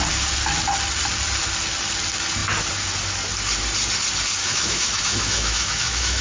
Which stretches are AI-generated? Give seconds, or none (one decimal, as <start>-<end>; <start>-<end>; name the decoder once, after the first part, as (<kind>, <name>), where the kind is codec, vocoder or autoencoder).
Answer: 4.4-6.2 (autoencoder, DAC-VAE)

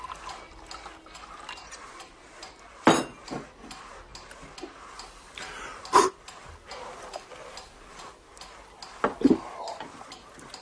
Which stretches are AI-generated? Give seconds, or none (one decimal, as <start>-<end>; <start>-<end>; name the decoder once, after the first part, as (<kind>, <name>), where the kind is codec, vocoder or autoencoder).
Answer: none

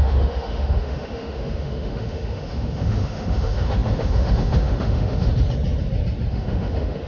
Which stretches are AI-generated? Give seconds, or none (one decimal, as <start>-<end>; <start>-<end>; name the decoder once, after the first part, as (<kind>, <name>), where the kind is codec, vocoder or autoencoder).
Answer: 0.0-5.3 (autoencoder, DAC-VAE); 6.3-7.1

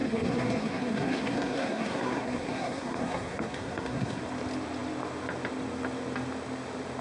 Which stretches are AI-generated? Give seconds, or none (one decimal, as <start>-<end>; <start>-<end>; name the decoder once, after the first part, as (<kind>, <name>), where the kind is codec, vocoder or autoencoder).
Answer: 0.0-4.2 (codec, SNAC)